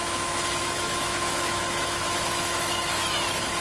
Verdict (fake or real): fake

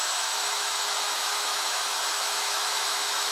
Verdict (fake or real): fake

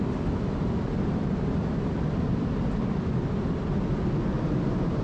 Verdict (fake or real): real